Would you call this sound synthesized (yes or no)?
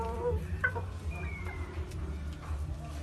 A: no